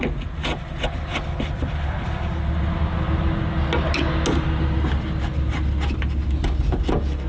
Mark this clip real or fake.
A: real